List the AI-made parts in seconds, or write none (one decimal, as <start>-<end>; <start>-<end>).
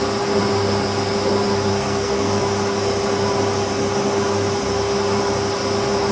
1.7-2.4